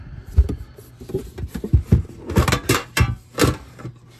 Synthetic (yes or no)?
no